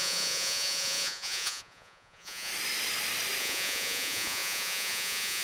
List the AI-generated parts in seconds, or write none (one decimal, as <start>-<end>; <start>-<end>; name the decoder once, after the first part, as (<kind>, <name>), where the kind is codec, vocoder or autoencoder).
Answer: 0.0-2.5 (vocoder, Vocos); 3.4-5.4